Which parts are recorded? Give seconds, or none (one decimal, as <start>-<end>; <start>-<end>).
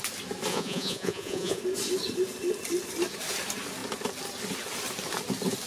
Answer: 0.0-0.5; 1.6-5.7